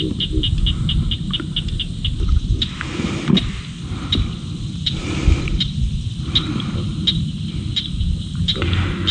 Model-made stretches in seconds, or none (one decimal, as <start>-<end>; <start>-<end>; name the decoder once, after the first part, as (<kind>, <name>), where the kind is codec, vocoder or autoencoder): none